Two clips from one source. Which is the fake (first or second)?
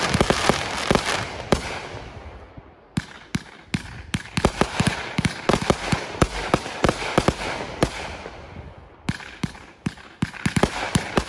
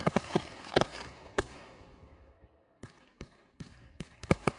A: second